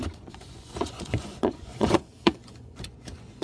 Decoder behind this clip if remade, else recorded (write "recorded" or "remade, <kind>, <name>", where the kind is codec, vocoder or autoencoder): remade, vocoder, Vocos